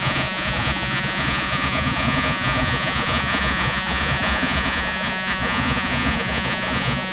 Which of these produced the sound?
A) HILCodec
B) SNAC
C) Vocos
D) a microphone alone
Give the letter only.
C